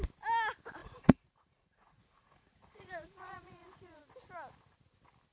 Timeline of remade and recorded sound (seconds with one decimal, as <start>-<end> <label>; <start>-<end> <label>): 0.0-0.8 recorded; 0.8-4.0 remade; 4.0-5.3 recorded